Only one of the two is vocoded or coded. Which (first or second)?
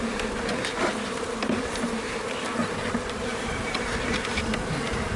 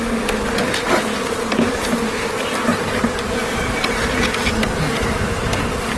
first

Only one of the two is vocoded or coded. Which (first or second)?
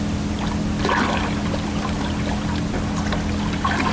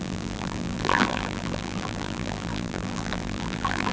second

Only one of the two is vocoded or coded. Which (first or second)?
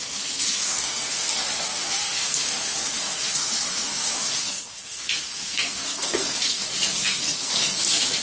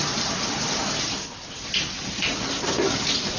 first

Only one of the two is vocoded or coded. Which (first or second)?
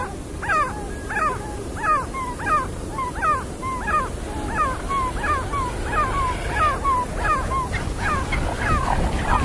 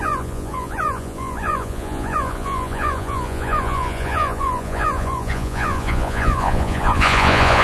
second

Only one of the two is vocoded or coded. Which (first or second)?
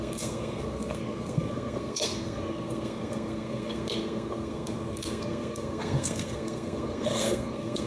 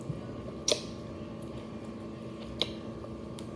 first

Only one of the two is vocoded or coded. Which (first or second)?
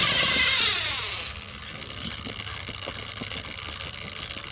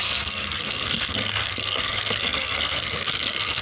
second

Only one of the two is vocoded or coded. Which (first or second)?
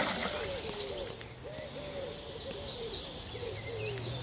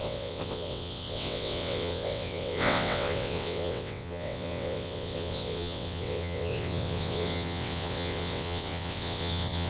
second